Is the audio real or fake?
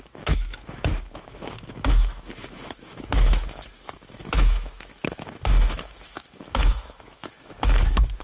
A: fake